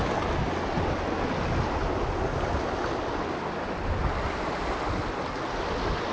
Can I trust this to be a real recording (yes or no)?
yes